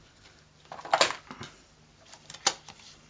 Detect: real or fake real